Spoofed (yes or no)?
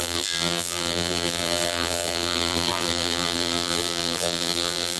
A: yes